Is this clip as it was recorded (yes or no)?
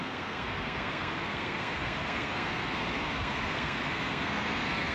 no